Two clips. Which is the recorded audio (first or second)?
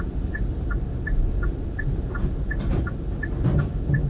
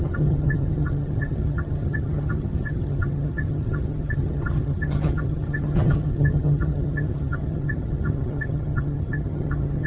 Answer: first